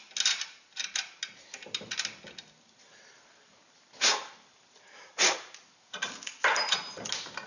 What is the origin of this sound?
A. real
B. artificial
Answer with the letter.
A